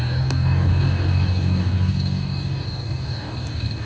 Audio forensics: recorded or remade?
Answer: remade